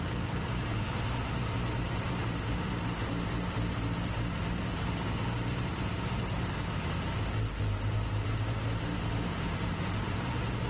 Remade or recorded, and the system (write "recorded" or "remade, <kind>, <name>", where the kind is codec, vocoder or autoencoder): remade, vocoder, BigVGAN v2